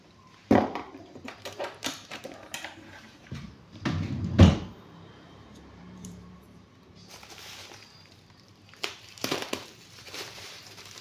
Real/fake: fake